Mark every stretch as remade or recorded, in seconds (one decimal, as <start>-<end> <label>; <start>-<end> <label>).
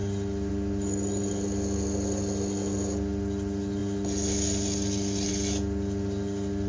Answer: 0.0-6.7 recorded